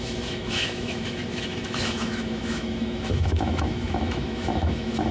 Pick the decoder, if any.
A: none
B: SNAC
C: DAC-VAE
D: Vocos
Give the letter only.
C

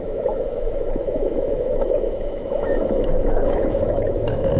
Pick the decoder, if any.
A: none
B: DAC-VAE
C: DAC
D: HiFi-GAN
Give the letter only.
B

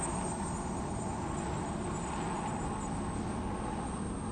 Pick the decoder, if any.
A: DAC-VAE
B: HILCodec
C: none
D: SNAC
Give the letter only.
C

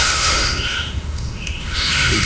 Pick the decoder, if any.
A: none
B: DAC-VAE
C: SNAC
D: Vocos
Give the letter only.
B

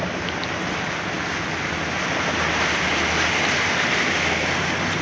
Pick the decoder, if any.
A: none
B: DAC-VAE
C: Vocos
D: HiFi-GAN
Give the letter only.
A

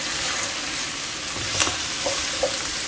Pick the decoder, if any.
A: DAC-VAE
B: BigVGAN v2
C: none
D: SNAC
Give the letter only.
C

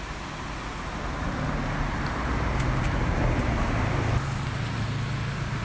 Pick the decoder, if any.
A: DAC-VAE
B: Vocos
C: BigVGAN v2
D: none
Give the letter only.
D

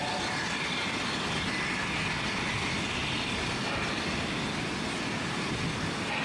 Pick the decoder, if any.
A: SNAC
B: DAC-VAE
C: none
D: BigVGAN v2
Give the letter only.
C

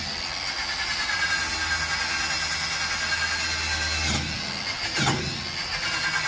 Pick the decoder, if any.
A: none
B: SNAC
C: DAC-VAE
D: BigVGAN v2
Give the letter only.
A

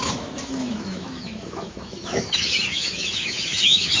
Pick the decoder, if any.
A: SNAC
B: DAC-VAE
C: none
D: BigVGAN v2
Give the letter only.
B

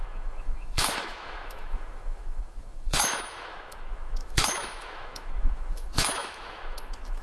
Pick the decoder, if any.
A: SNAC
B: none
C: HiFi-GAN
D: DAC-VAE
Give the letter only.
D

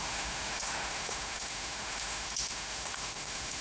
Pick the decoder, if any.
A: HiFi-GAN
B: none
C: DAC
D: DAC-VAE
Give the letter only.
D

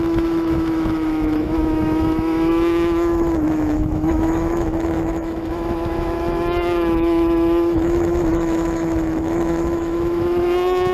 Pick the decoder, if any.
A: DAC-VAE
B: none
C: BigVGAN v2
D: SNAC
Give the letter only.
A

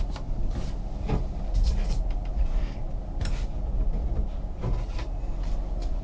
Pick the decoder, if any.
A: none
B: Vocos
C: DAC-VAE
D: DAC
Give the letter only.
A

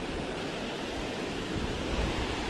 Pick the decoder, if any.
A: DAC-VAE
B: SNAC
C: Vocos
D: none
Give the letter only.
D